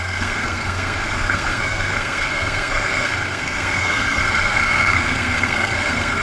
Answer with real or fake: fake